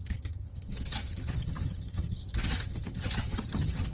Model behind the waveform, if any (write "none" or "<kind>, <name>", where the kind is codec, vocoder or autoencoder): vocoder, HiFi-GAN